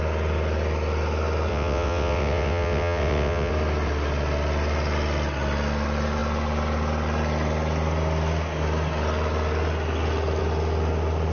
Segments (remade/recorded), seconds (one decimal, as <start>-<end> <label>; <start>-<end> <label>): 0.0-1.5 recorded; 1.5-3.5 remade; 3.5-11.3 recorded